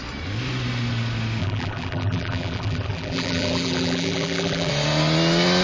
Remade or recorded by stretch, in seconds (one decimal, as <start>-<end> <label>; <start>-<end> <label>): 0.0-1.4 recorded; 1.4-4.7 remade; 4.7-5.6 recorded